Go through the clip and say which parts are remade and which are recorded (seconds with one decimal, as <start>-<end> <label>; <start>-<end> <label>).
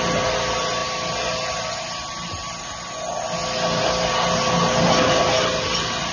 0.0-6.1 recorded